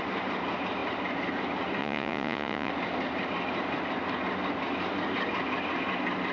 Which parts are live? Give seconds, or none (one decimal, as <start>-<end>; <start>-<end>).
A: 0.0-1.8; 2.7-6.3